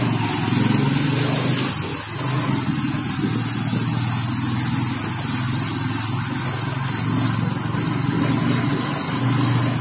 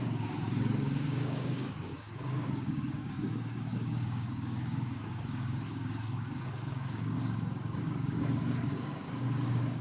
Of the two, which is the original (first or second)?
first